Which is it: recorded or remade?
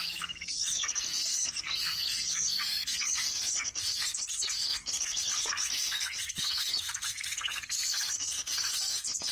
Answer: remade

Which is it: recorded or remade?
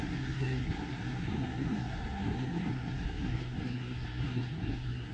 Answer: remade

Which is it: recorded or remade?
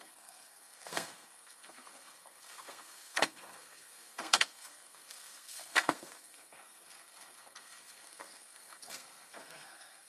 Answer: remade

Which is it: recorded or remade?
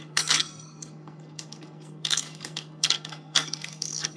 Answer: remade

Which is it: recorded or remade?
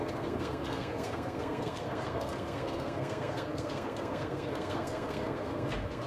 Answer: remade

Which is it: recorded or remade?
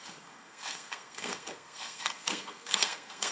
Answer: remade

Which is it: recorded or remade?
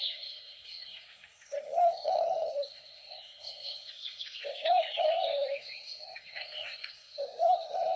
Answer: remade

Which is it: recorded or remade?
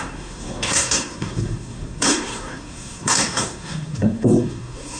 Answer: remade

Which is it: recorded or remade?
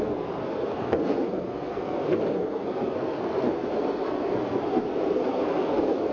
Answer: remade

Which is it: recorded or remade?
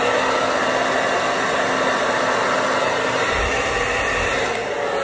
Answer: recorded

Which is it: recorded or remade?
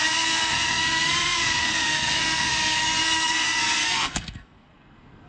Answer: remade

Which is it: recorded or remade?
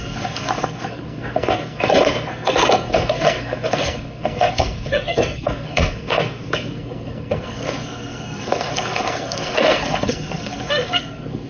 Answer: remade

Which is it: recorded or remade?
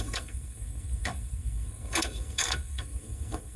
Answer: remade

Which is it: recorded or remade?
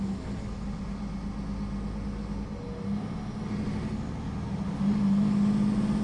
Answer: recorded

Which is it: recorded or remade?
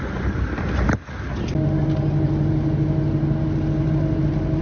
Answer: recorded